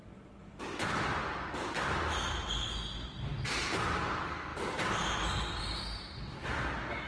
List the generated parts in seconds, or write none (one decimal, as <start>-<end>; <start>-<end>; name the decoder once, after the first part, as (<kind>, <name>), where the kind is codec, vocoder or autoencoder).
0.0-1.8 (vocoder, BigVGAN v2)